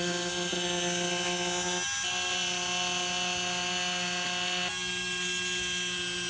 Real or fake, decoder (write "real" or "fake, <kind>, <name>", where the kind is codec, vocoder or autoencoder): real